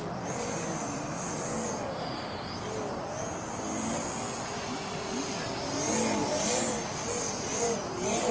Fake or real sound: real